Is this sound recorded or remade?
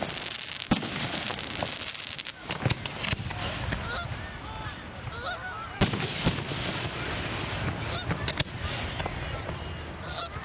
recorded